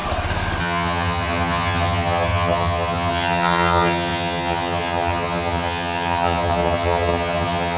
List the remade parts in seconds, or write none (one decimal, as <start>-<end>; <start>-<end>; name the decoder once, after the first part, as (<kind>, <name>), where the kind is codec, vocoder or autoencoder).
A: 0.6-7.8 (vocoder, HiFi-GAN)